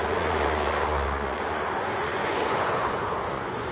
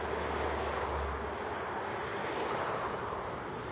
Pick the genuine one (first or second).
second